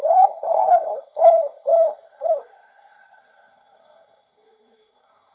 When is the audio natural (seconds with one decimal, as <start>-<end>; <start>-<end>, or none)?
none